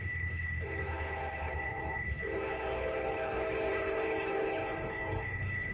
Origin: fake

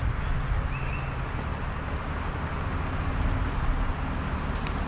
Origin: real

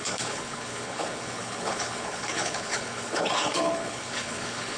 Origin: fake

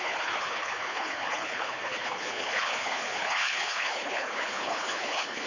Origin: fake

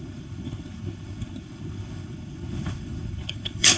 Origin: fake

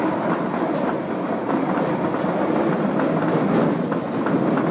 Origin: real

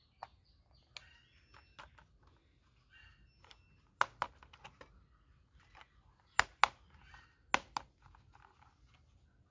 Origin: real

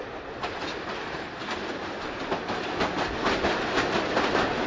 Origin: real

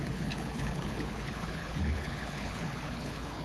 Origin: fake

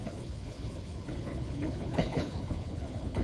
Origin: fake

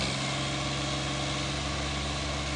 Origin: real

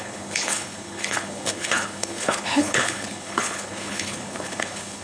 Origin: fake